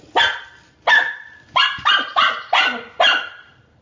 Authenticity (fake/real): real